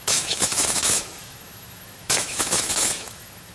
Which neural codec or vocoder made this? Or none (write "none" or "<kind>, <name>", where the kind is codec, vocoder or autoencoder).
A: autoencoder, DAC-VAE